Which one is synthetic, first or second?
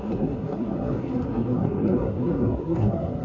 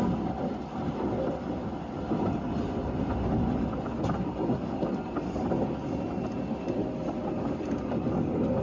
first